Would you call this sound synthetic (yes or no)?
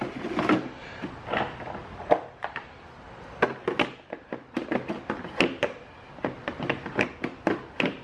no